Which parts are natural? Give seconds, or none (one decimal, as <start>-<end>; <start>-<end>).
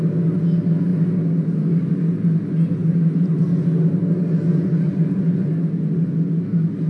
0.0-4.5; 5.5-6.9